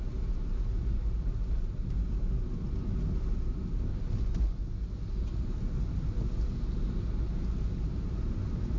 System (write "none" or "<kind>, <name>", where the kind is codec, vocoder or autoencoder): none